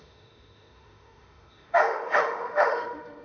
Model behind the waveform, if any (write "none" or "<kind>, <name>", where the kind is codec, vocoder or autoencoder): autoencoder, DAC-VAE